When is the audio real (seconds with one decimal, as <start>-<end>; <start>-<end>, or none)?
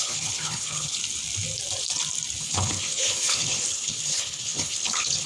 1.0-2.4